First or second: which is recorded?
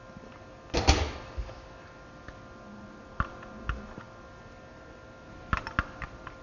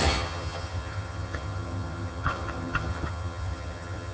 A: first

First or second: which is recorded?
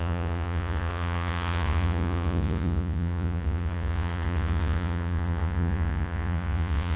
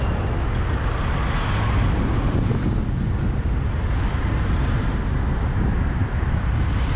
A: second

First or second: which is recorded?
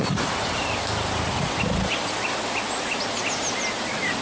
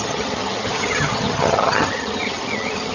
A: first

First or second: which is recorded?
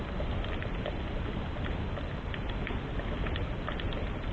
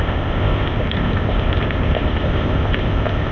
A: first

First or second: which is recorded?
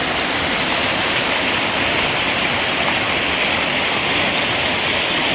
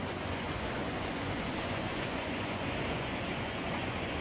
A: first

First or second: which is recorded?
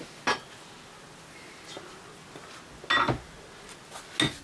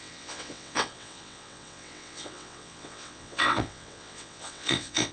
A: first